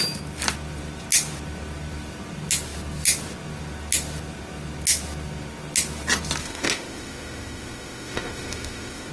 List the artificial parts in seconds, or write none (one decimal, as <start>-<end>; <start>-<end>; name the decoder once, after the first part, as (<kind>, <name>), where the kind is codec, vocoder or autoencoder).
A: 6.4-9.1 (autoencoder, DAC-VAE)